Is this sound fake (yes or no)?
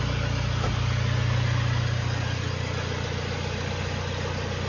no